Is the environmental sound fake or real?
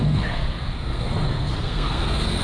fake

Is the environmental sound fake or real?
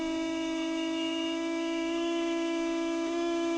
fake